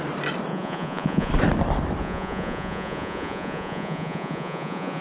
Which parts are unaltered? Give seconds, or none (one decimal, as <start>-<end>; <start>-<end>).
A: 0.0-0.5; 1.3-2.0